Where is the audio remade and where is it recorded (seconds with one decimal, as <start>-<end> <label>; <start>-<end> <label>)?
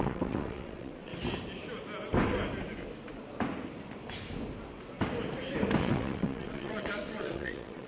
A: 0.0-1.1 remade; 1.1-5.8 recorded; 5.8-7.9 remade